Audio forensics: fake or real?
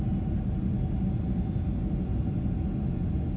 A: real